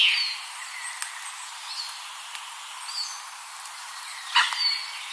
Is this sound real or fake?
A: real